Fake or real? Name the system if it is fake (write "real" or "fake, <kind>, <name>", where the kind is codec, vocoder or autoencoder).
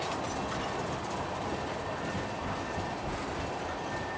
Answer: real